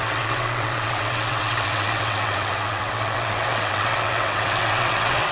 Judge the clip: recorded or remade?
remade